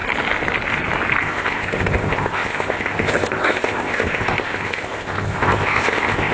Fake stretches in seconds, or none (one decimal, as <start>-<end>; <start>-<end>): 1.2-6.3